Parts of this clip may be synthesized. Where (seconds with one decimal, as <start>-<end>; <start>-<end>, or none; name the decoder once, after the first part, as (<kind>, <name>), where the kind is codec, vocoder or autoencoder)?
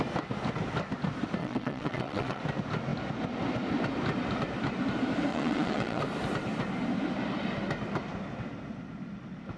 1.4-2.4 (vocoder, WaveNeXt); 5.3-6.0